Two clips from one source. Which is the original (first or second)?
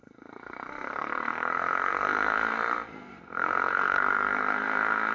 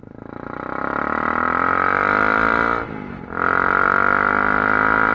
second